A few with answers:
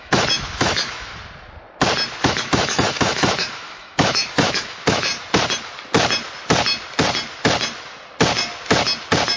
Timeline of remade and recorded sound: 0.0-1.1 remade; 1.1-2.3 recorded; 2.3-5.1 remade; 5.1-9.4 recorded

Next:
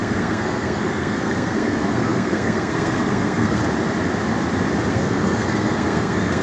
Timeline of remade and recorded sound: 0.0-3.6 remade; 3.6-4.9 recorded; 4.9-6.4 remade

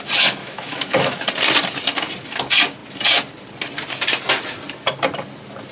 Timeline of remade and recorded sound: 0.0-0.4 recorded; 0.4-1.3 remade; 1.3-5.7 recorded

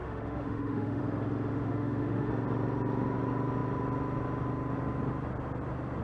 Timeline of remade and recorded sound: 0.0-1.0 remade; 1.0-1.5 recorded; 1.5-2.3 remade; 2.3-6.0 recorded

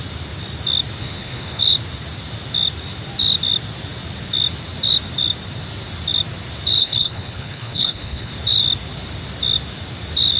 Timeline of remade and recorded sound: 0.0-1.0 recorded; 1.0-1.6 remade; 1.6-6.8 recorded; 6.8-8.3 remade; 8.3-10.4 recorded